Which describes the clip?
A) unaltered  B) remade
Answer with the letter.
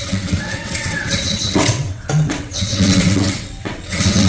B